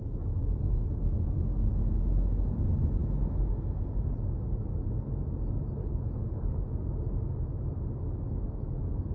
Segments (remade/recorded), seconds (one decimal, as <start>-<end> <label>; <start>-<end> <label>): 0.0-5.8 recorded; 5.8-6.6 remade; 6.6-9.1 recorded